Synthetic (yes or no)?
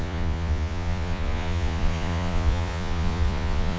yes